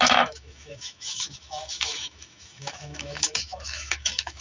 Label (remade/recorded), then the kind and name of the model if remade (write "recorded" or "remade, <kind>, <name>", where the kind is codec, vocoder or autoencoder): remade, autoencoder, DAC-VAE